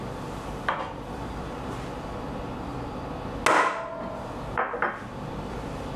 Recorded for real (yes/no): yes